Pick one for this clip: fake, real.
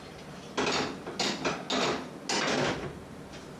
real